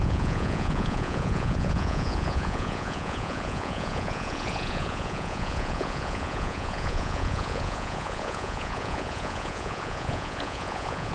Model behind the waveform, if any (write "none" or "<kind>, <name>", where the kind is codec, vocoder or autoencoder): vocoder, Vocos